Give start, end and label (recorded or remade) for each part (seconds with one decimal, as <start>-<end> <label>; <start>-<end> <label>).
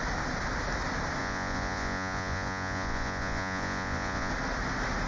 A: 0.0-1.2 recorded; 1.2-4.3 remade; 4.3-5.1 recorded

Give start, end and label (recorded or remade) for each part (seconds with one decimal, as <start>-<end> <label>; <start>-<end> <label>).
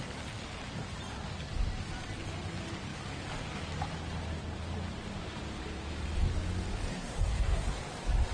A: 0.0-6.9 recorded; 6.9-7.8 remade; 7.8-8.3 recorded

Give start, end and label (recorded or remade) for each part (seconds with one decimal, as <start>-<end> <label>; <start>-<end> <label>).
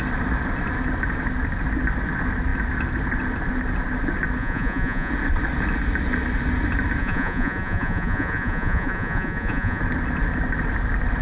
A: 0.0-4.4 recorded; 4.4-5.1 remade; 5.1-7.0 recorded; 7.0-9.8 remade; 9.8-11.2 recorded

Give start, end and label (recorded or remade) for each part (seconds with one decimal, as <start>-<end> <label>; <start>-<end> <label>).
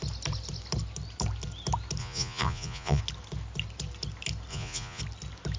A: 0.0-2.0 recorded; 2.0-3.0 remade; 3.0-4.5 recorded; 4.5-5.0 remade; 5.0-5.6 recorded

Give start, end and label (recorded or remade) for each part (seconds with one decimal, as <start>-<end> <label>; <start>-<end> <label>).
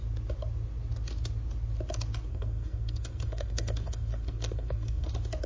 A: 0.0-2.3 recorded; 2.3-5.1 remade; 5.1-5.5 recorded